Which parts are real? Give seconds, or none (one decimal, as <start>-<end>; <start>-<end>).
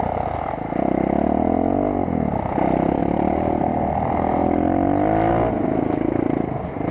0.0-6.9